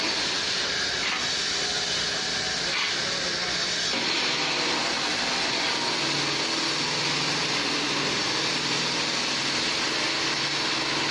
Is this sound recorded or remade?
recorded